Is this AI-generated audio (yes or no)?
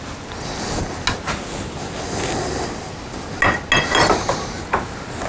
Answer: no